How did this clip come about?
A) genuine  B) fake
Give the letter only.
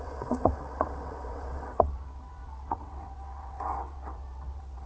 B